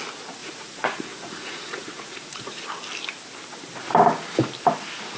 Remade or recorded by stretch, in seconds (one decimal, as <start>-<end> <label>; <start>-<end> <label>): 0.0-0.4 recorded; 0.4-2.6 remade; 2.6-5.2 recorded